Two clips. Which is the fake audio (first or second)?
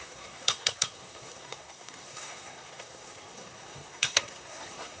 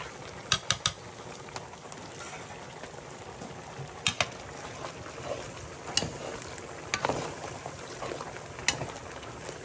first